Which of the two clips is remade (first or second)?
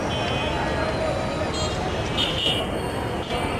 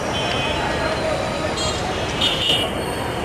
second